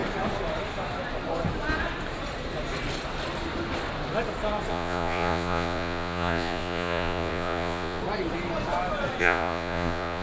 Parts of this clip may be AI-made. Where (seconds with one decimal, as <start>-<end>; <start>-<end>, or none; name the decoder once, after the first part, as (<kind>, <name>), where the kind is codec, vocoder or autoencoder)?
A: 4.7-8.0 (vocoder, Vocos); 9.2-10.2